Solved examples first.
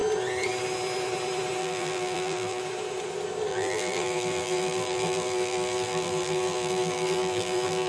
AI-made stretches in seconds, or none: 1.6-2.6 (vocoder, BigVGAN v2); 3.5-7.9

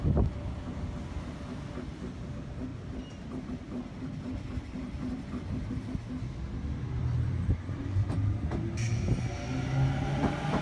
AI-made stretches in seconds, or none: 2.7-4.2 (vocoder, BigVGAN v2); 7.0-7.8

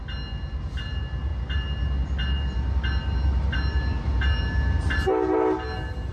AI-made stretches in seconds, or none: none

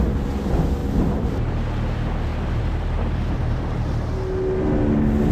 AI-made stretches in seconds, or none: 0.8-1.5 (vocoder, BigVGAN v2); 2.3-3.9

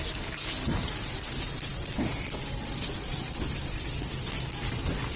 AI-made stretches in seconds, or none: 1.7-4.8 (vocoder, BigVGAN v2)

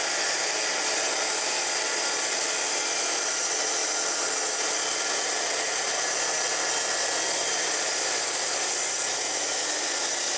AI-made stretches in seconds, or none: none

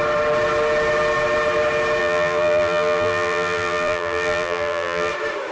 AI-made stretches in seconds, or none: 2.0-5.1 (vocoder, BigVGAN v2)

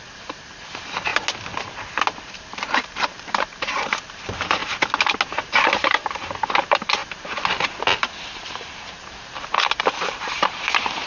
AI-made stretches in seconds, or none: 0.0-1.1 (vocoder, BigVGAN v2); 2.3-4.6; 5.4-7.0; 8.0-11.1